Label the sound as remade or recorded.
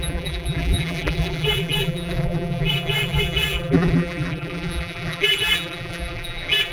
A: remade